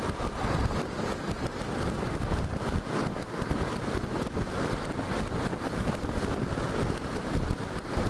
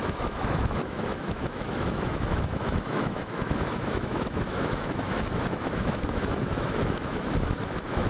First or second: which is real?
first